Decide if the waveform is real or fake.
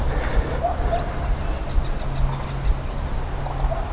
real